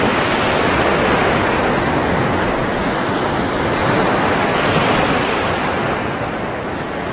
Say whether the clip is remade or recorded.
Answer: recorded